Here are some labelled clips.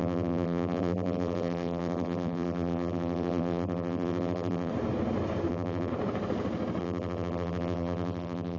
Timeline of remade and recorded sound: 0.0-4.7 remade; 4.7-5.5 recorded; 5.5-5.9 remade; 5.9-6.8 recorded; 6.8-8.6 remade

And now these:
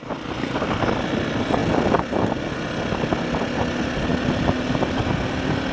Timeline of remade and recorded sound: 0.0-4.1 recorded; 4.1-4.7 remade; 4.7-5.7 recorded

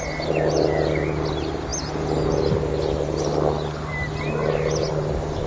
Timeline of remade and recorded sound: 0.0-5.5 recorded

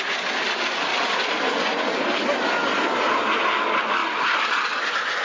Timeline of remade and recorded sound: 0.0-2.6 recorded; 2.6-3.4 remade; 3.4-5.2 recorded

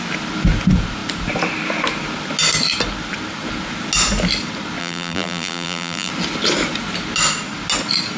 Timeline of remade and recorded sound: 0.0-4.8 recorded; 4.8-6.1 remade; 6.1-8.2 recorded

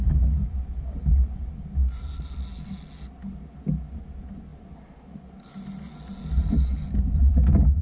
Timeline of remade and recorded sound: 0.0-7.8 recorded

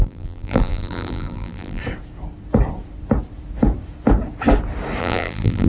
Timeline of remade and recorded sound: 0.0-1.8 remade; 1.8-5.0 recorded; 5.0-5.7 remade